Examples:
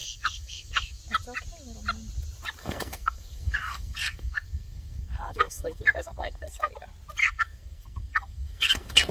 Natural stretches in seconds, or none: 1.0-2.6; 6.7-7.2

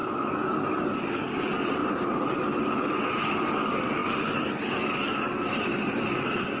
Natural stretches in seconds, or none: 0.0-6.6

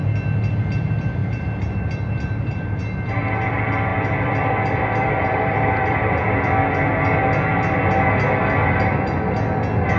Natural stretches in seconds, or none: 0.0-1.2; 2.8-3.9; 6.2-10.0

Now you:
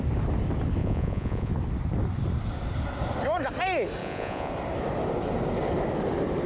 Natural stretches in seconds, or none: 0.0-0.8; 1.5-4.0; 4.5-6.5